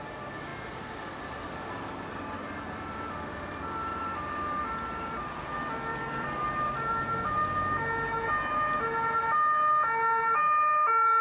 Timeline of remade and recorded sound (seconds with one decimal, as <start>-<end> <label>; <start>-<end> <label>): 0.0-5.9 recorded; 5.9-6.9 remade; 6.9-11.2 recorded